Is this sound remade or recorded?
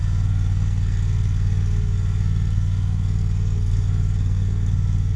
remade